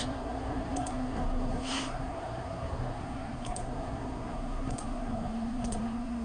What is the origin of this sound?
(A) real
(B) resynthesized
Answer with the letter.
B